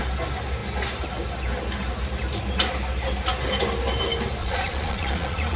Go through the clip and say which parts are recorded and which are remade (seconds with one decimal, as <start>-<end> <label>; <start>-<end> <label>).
0.0-4.4 recorded; 4.4-5.6 remade